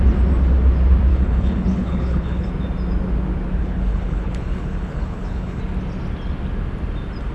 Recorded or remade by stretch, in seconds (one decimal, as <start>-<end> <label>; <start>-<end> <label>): 0.0-1.1 recorded; 1.1-2.5 remade; 2.5-3.6 recorded; 3.6-5.6 remade; 5.6-7.3 recorded